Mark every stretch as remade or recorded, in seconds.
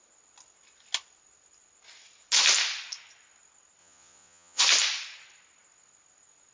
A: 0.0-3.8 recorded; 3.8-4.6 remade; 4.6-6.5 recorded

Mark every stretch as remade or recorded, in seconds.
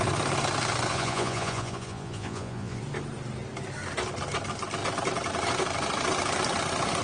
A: 0.0-0.9 recorded; 0.9-2.8 remade; 2.8-7.0 recorded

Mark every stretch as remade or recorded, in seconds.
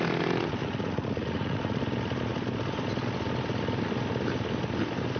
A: 0.0-0.6 recorded; 0.6-1.8 remade; 1.8-5.2 recorded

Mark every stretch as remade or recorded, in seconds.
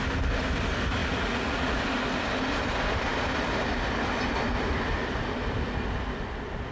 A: 0.0-1.0 recorded; 1.0-1.8 remade; 1.8-6.7 recorded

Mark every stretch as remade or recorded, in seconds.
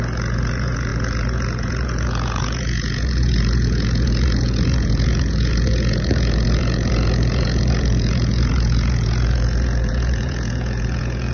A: 0.0-11.3 remade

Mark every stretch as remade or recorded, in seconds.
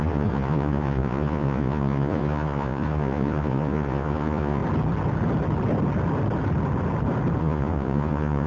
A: 0.0-4.6 remade; 4.6-7.4 recorded; 7.4-8.5 remade